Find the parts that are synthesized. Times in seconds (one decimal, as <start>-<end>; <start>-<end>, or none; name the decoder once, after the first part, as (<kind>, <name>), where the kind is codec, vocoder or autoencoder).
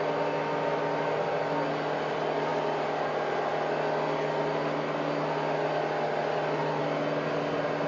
none